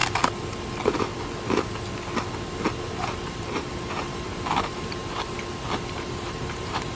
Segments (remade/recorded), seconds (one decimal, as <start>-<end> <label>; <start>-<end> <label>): 0.0-2.8 recorded; 2.8-5.0 remade; 5.0-5.9 recorded; 5.9-7.0 remade

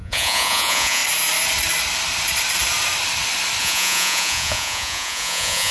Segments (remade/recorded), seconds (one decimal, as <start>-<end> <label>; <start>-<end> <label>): 0.0-1.0 remade; 1.0-3.6 recorded; 3.6-5.7 remade

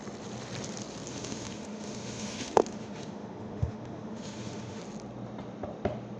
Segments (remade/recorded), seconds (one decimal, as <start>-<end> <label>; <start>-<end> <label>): 0.0-1.1 recorded; 1.1-4.8 remade; 4.8-6.2 recorded

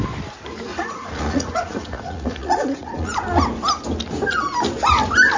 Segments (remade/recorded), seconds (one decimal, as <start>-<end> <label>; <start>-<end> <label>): 0.0-0.7 recorded; 0.7-3.1 remade; 3.1-5.4 recorded

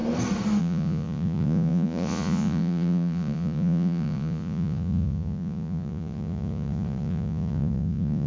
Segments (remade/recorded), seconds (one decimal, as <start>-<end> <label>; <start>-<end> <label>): 0.0-0.6 recorded; 0.6-8.3 remade

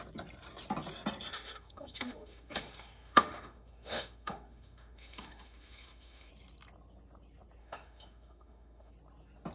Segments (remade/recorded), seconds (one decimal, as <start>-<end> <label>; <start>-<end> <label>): 0.0-1.3 recorded; 1.3-6.3 remade; 6.3-7.6 recorded; 7.6-8.9 remade; 8.9-9.5 recorded